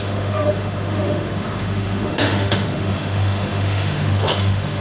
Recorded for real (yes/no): no